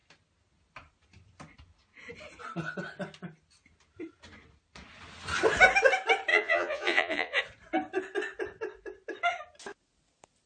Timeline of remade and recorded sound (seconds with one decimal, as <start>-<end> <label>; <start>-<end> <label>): 0.0-6.3 recorded; 6.3-7.4 remade; 7.4-10.5 recorded